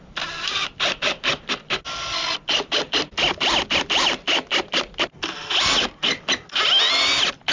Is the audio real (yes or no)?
yes